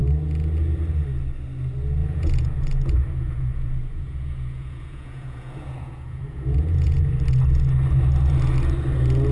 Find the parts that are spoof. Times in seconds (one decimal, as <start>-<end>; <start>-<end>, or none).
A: 2.0-7.1